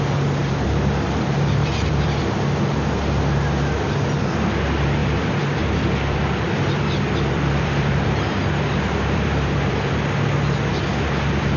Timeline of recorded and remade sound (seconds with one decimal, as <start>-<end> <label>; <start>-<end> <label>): 0.0-0.4 recorded; 0.4-2.2 remade; 2.2-5.0 recorded; 5.0-9.9 remade; 9.9-11.6 recorded